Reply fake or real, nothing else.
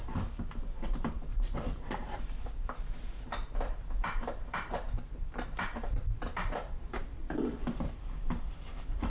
fake